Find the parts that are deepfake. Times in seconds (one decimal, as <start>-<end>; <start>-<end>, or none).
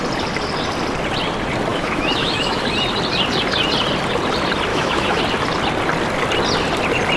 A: 1.7-2.6; 4.7-5.2